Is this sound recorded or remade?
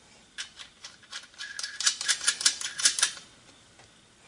recorded